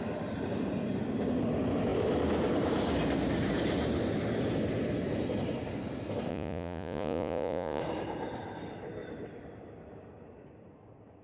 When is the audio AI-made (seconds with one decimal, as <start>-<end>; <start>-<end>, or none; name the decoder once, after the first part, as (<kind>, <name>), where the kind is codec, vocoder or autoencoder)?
6.3-7.8 (vocoder, Vocos)